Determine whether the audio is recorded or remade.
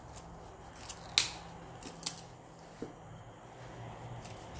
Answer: recorded